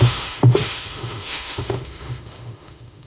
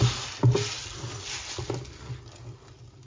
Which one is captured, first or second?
second